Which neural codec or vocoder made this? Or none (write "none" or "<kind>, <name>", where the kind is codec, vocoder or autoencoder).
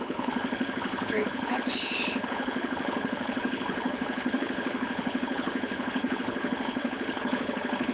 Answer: codec, HILCodec